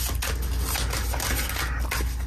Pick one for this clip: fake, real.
real